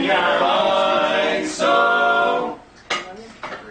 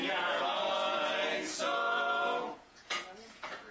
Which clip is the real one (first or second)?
first